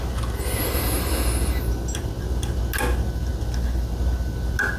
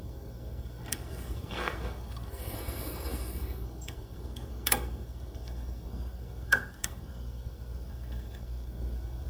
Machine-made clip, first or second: second